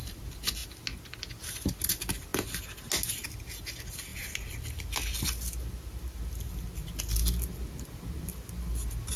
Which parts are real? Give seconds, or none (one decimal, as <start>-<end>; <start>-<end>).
0.0-9.2